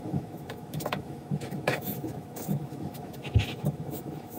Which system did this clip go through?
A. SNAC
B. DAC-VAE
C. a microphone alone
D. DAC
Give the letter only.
B